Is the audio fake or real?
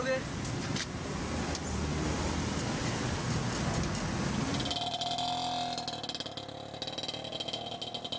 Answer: real